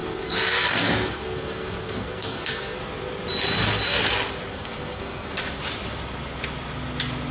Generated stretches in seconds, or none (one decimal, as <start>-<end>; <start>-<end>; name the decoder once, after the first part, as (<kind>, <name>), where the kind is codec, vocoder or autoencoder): 0.0-2.8 (codec, SNAC); 4.5-5.3